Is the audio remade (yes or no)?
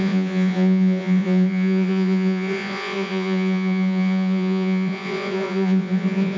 yes